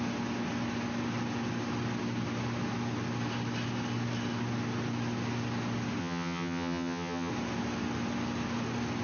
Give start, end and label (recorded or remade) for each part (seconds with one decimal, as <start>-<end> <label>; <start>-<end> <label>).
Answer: 0.0-6.0 recorded; 6.0-7.3 remade; 7.3-9.0 recorded